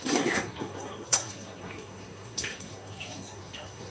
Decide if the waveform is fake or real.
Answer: fake